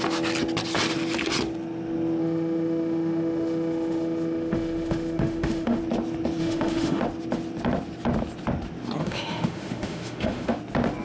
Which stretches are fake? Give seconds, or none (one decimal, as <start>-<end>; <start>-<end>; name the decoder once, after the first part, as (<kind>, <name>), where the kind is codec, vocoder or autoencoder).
2.2-5.8 (autoencoder, DAC-VAE); 6.4-7.0; 9.0-10.5